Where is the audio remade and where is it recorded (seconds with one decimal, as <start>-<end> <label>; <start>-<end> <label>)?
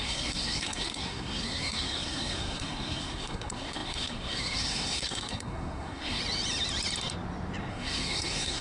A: 0.0-6.2 remade; 6.2-7.7 recorded; 7.7-8.6 remade